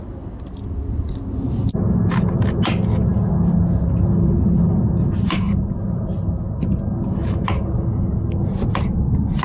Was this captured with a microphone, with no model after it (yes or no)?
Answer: yes